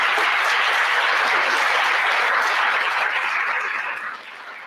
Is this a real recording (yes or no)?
no